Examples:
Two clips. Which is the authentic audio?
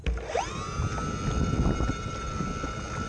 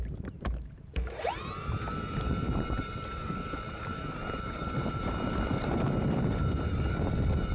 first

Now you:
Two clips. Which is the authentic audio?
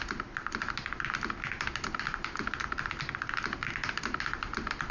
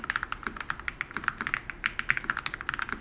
second